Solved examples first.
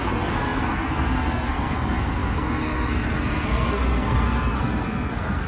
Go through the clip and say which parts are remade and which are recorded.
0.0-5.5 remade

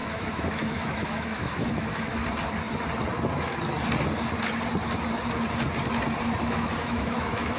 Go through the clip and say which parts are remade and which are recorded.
0.0-2.2 remade; 2.2-6.5 recorded; 6.5-7.6 remade